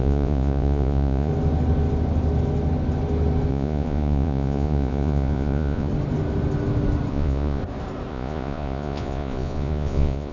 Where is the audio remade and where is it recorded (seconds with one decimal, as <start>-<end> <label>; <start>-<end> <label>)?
0.0-1.3 remade; 1.3-3.5 recorded; 3.5-5.9 remade; 5.9-7.1 recorded; 7.1-7.6 remade; 7.6-8.1 recorded; 8.1-10.3 remade